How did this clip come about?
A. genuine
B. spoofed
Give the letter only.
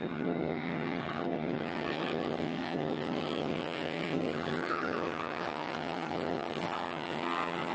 B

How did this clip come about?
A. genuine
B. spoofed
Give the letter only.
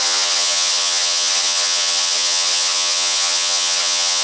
B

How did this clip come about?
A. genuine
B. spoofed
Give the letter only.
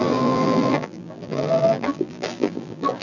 B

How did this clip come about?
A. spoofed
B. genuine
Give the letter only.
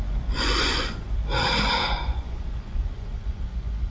A